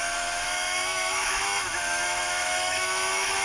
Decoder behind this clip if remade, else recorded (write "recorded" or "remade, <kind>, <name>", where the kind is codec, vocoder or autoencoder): remade, autoencoder, DAC-VAE